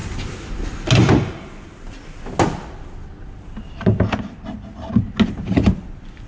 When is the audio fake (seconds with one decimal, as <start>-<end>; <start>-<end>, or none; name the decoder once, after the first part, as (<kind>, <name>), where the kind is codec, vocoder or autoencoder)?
none